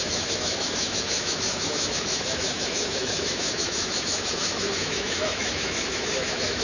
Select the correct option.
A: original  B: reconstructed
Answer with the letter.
B